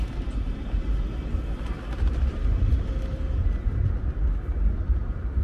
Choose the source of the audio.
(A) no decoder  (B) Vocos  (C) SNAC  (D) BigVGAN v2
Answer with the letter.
A